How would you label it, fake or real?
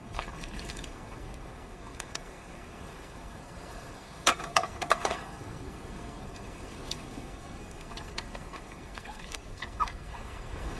fake